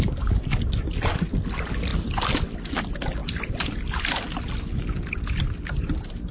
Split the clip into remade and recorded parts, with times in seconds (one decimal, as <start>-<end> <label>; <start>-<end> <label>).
0.0-6.3 recorded